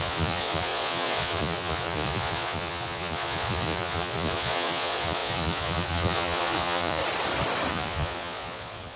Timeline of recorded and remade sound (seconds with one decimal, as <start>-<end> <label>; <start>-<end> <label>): 0.0-7.0 remade; 7.0-7.7 recorded; 7.7-9.0 remade